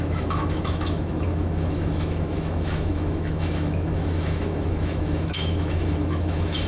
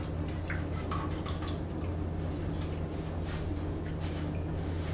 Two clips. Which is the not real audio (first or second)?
first